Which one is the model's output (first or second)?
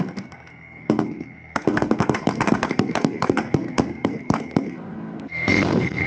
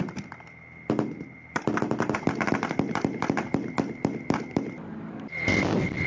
first